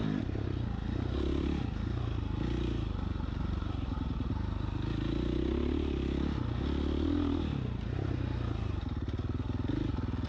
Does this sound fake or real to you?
real